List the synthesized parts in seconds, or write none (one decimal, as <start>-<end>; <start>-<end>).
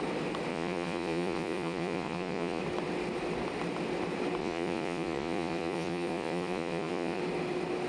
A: 0.5-2.6; 4.4-7.2